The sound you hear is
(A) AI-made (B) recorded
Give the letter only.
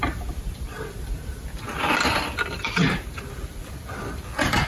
B